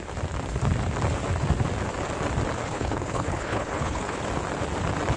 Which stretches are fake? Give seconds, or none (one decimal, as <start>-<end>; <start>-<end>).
2.6-4.2